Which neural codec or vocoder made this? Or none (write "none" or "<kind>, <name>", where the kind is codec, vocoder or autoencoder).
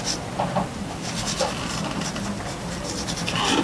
none